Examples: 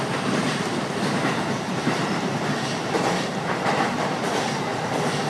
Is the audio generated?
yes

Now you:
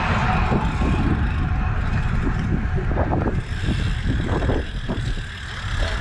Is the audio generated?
no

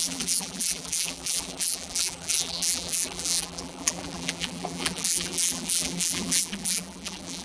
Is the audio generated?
yes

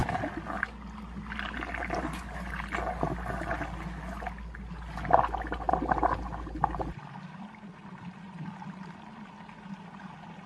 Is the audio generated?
no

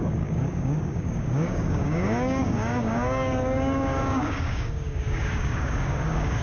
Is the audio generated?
yes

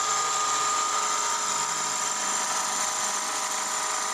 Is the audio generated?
yes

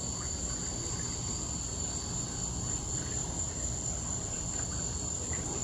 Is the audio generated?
no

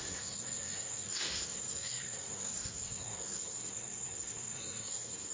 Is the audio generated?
yes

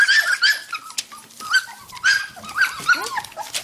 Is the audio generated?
yes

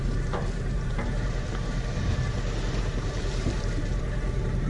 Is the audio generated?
yes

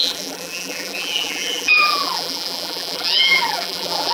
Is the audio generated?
yes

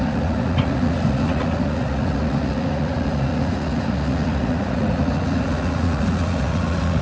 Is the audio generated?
yes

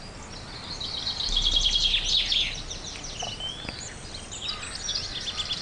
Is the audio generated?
no